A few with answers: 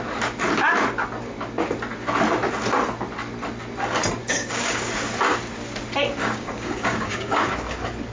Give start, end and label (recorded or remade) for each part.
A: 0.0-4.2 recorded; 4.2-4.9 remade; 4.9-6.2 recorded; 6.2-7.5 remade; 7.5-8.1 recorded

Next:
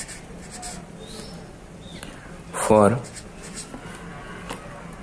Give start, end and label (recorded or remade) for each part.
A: 0.0-5.0 recorded

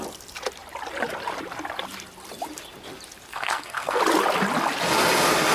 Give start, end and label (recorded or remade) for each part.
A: 0.0-3.3 recorded; 3.3-4.0 remade; 4.0-5.5 recorded

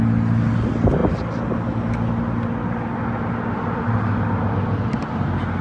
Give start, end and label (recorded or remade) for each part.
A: 0.0-5.6 recorded

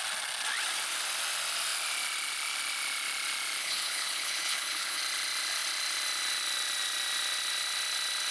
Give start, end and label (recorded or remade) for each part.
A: 0.0-3.6 recorded; 3.6-5.0 remade; 5.0-8.3 recorded

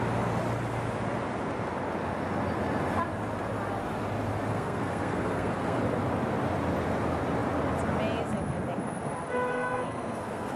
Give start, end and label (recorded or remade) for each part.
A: 0.0-4.5 recorded; 4.5-5.8 remade; 5.8-9.5 recorded; 9.5-10.6 remade

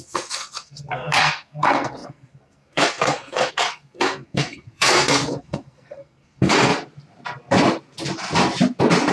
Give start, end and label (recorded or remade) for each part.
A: 0.0-6.7 remade; 6.7-9.1 recorded